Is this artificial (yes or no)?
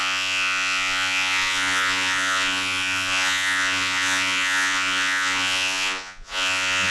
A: yes